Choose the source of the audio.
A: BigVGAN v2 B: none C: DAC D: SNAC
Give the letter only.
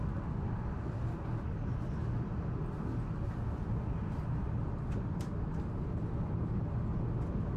B